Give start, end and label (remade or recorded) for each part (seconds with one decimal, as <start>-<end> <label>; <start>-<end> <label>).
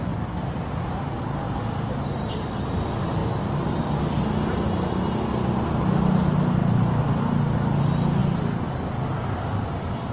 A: 0.0-10.1 recorded